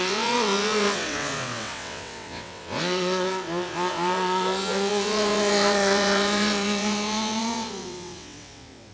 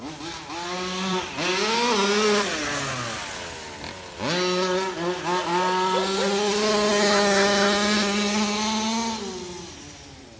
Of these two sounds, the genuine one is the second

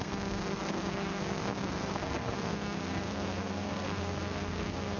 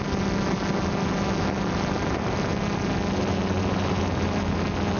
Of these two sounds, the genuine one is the second